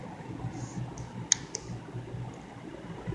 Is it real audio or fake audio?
real